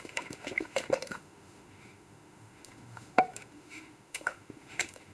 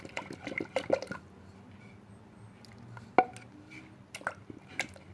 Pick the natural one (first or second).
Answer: second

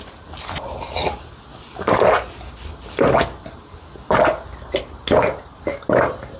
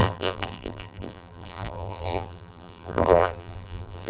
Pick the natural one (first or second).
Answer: first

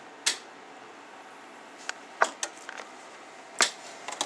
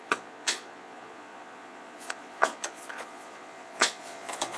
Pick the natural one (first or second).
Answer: first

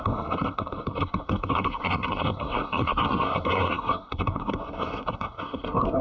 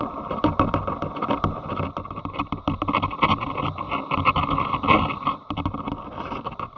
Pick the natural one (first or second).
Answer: second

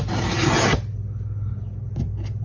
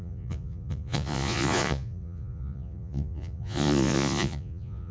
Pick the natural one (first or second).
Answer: first